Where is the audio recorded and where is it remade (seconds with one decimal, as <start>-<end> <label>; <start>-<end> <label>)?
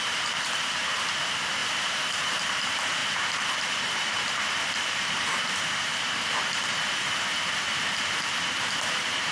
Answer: 0.0-9.3 remade